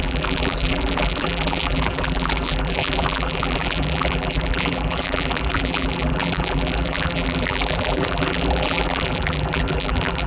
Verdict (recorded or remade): remade